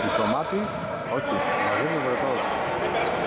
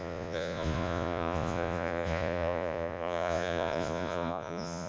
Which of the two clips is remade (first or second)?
second